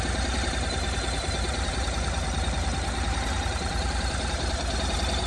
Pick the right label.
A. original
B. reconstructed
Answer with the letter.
B